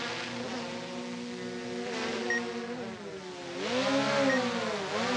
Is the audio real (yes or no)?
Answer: yes